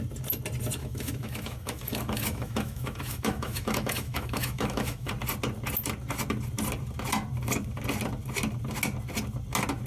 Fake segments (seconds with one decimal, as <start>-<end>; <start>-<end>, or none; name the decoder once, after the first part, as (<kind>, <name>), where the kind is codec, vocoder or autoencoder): 0.8-5.1 (autoencoder, DAC-VAE)